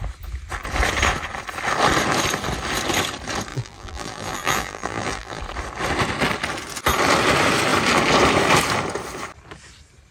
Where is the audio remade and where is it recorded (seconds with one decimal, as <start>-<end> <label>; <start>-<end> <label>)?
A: 0.0-3.5 recorded; 3.5-5.4 remade; 5.4-10.1 recorded